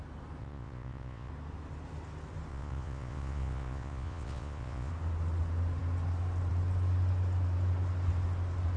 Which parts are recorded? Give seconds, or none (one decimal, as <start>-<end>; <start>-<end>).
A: 0.0-0.4; 1.3-2.5; 4.9-8.8